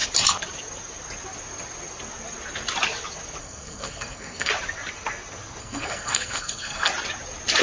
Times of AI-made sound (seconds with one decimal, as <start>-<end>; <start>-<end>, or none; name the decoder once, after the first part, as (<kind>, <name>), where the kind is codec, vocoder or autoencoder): 3.4-4.5 (codec, SNAC); 5.6-6.9